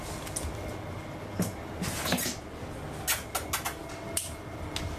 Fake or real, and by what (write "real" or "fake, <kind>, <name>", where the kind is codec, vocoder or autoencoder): real